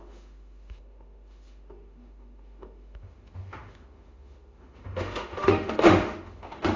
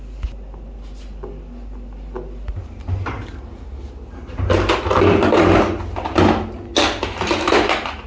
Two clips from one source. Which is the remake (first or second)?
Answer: first